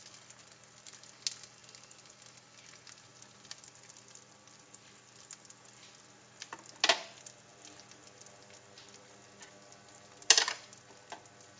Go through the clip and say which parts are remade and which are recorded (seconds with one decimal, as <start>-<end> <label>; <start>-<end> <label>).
0.0-11.6 recorded